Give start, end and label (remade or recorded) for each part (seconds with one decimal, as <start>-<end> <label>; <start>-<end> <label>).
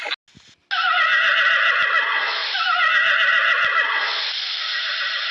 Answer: 0.0-5.3 recorded